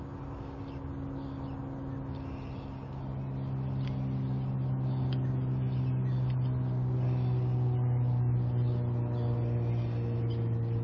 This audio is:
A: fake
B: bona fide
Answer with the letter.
B